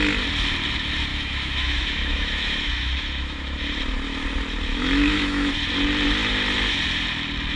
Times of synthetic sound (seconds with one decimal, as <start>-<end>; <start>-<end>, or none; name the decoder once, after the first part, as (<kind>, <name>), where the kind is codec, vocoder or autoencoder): 1.1-3.6 (autoencoder, DAC-VAE); 4.7-5.5